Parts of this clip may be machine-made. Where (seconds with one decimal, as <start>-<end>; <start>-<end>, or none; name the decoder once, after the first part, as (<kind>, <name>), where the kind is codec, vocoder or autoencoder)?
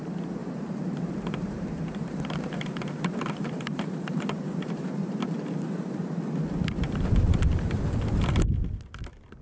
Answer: 0.4-5.2 (vocoder, BigVGAN v2)